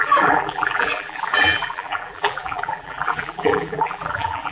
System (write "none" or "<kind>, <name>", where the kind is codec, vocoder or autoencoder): vocoder, BigVGAN v2